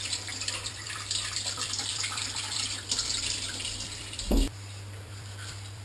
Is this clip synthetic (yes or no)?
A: yes